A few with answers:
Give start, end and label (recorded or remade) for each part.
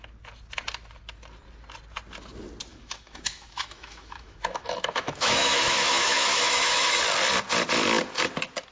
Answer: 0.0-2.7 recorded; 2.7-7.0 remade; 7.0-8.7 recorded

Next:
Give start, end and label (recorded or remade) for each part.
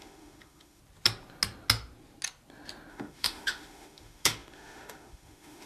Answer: 0.0-0.8 remade; 0.8-2.9 recorded; 2.9-5.7 remade